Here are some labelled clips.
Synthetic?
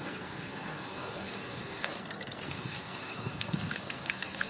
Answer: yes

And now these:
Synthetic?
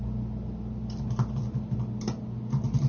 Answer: no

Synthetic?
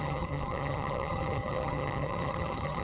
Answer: yes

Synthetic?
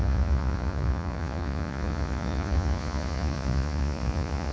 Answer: yes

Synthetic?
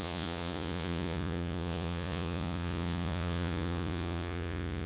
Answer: yes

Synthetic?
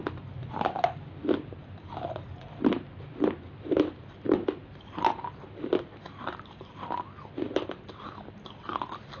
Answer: no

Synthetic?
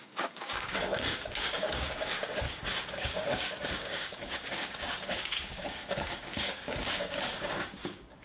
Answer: yes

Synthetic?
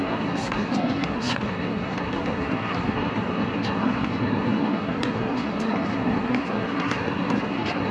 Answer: yes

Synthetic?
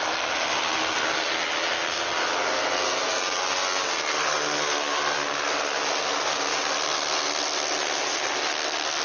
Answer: no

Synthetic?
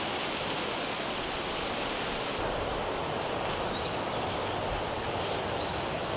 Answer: no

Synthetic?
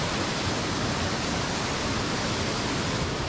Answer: no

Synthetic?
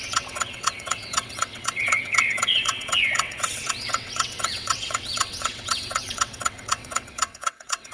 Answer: yes